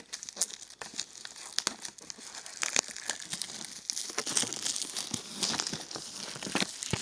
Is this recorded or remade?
recorded